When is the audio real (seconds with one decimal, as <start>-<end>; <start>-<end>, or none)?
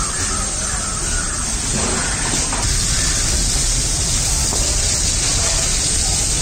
0.0-6.4